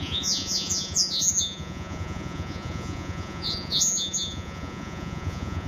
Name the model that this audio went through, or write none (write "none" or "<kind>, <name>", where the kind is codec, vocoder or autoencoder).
vocoder, Vocos